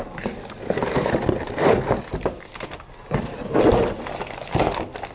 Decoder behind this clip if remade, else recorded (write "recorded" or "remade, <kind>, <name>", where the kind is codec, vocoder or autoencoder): recorded